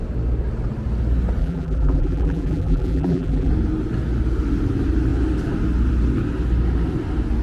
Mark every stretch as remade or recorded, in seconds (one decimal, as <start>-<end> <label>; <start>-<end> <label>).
0.0-1.4 recorded; 1.4-3.5 remade; 3.5-7.4 recorded